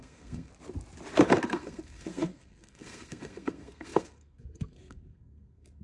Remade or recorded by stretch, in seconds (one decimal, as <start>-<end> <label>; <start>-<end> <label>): 0.0-0.5 remade; 0.5-1.4 recorded; 1.4-5.8 remade